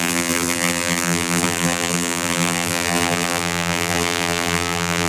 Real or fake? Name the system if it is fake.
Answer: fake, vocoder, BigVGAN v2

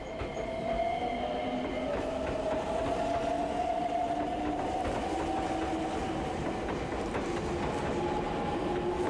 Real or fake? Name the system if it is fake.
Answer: real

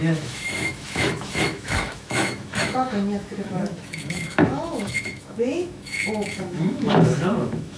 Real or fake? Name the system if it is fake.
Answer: fake, autoencoder, DAC-VAE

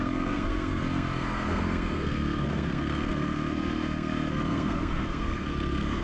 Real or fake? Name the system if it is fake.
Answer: fake, codec, SNAC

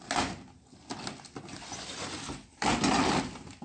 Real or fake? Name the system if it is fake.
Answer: real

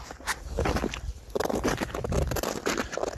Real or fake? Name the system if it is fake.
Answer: real